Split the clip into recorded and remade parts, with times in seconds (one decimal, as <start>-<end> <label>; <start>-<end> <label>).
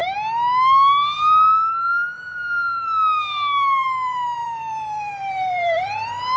0.0-3.8 recorded; 3.8-6.4 remade